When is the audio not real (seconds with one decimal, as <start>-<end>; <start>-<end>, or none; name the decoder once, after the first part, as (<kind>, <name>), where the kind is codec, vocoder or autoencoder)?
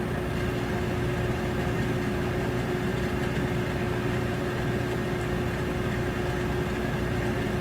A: none